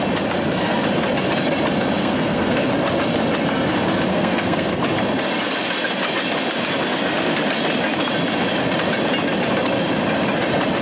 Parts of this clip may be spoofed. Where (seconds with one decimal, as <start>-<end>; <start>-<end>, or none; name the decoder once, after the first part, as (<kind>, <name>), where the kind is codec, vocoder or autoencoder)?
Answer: 2.0-2.7 (codec, SNAC); 4.1-4.8